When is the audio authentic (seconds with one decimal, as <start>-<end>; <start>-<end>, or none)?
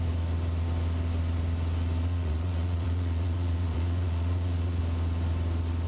0.0-2.0; 4.8-5.9